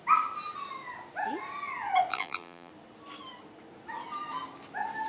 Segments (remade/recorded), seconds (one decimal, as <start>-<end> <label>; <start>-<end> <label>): 0.0-2.1 recorded; 2.1-2.7 remade; 2.7-5.1 recorded